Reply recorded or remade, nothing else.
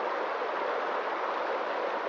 recorded